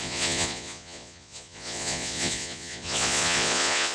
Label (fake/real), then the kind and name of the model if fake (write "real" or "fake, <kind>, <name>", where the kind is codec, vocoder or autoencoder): fake, vocoder, Vocos